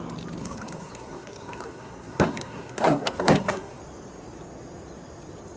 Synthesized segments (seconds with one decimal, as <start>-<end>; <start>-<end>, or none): 0.4-3.8

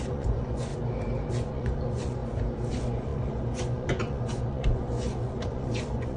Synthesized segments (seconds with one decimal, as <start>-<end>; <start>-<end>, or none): 0.0-0.7; 1.3-2.2; 2.7-6.2

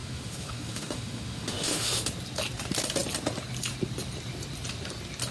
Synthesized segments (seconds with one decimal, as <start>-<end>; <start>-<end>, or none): 0.0-2.0

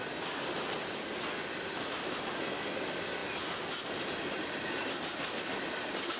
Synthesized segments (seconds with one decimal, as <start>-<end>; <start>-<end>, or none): none

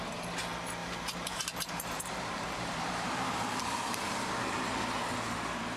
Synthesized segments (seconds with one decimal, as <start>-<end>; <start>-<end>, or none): 0.8-4.3

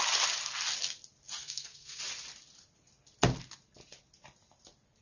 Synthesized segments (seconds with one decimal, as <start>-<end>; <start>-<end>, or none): 1.4-2.0

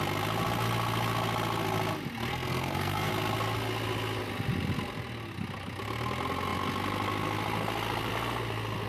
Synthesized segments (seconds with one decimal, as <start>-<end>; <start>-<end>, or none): 2.3-3.1

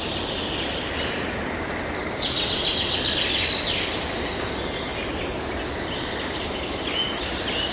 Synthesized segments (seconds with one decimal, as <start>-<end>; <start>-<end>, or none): none